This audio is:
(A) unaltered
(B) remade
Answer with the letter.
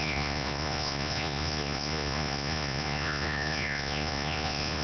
B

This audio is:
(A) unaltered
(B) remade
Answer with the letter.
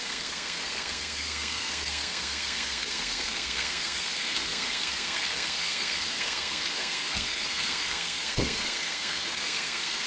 B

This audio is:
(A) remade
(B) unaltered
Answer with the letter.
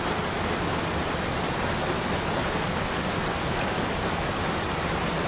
B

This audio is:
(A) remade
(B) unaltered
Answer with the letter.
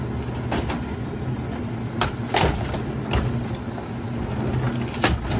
B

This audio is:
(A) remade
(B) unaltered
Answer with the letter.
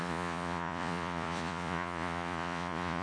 A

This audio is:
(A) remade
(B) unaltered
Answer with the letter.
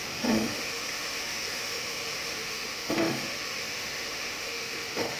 A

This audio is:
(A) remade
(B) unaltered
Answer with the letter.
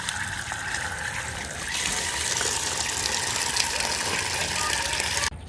B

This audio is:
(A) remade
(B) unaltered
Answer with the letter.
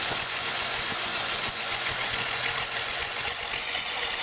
A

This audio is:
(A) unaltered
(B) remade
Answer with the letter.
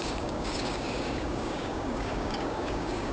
B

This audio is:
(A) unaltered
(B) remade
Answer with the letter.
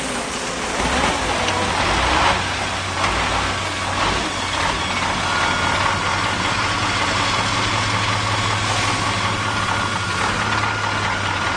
A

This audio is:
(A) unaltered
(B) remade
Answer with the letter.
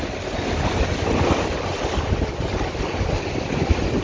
A